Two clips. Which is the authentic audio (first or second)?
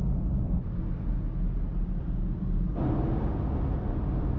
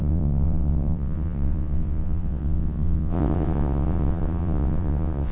first